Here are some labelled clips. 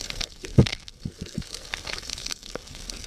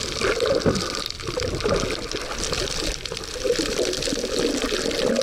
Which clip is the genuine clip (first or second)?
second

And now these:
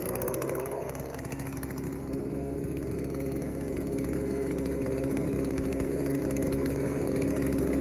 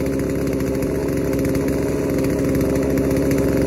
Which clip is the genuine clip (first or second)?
second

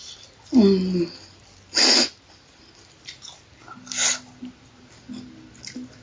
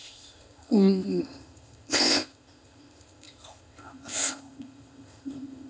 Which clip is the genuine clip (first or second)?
first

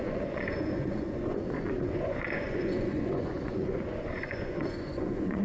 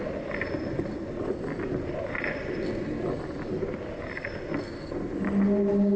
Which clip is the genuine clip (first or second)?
second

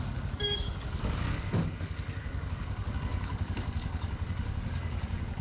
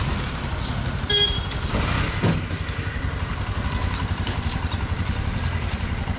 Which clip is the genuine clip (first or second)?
second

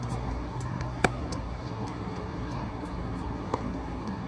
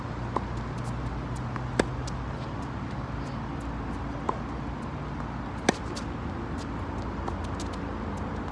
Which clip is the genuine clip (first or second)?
second